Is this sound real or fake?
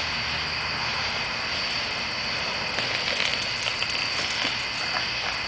real